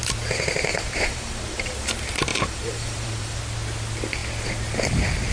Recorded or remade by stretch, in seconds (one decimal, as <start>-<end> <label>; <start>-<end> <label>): 0.0-0.7 recorded; 0.7-1.9 remade; 1.9-2.3 recorded; 2.3-3.4 remade; 3.4-5.3 recorded